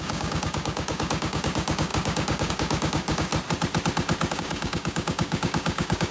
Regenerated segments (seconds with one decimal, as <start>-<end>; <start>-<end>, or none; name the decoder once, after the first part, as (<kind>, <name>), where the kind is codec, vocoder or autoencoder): 0.0-3.3 (codec, DAC); 4.3-6.1